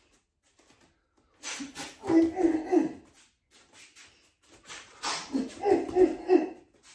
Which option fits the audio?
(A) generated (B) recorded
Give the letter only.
B